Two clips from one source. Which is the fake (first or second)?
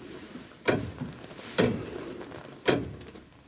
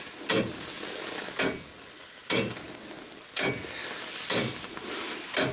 first